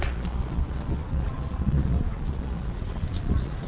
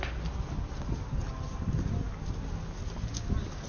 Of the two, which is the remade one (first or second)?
first